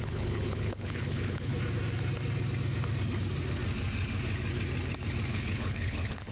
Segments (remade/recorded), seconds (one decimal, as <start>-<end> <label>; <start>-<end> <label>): 0.0-1.5 remade; 1.5-5.3 recorded; 5.3-6.3 remade